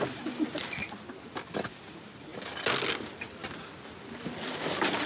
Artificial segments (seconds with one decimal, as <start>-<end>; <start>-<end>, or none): none